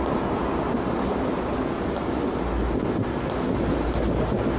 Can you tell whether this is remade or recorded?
recorded